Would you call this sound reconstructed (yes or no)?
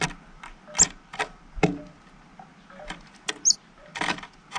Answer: no